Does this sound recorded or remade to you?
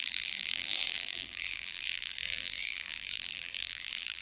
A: remade